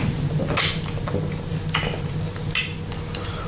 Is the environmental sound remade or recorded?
recorded